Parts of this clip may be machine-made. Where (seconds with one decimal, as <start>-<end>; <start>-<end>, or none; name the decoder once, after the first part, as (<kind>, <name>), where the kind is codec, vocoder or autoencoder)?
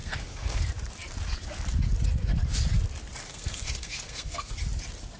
0.0-0.6 (codec, SNAC); 3.2-4.5